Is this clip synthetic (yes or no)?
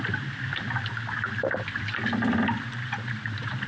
no